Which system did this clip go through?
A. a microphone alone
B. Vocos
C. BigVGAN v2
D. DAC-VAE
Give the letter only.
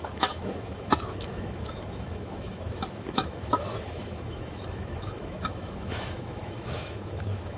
D